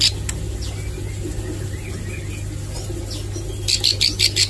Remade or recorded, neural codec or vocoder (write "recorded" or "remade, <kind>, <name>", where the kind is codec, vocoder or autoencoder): recorded